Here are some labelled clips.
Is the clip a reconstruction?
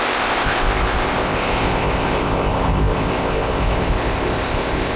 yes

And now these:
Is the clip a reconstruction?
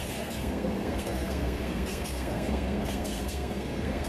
yes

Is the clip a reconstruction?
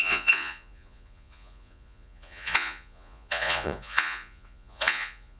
yes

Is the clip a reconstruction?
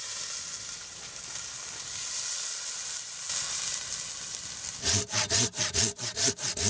no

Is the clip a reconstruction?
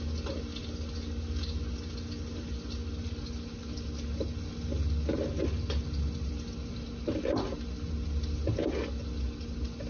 no